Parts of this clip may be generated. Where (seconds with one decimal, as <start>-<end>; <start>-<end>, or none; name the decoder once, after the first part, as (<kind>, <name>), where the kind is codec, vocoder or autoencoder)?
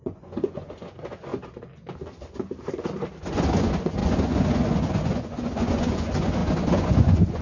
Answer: 0.0-1.3 (vocoder, Vocos); 3.2-7.4